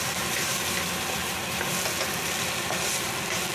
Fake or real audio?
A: real